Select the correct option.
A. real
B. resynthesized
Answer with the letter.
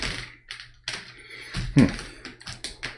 A